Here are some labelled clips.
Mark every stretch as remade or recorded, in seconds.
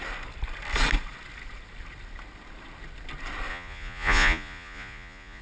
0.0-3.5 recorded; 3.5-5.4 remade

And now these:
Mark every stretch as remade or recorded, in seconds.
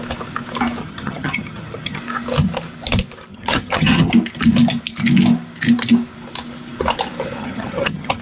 0.0-0.8 recorded; 0.8-2.0 remade; 2.0-3.3 recorded; 3.3-4.1 remade; 4.1-7.4 recorded; 7.4-8.2 remade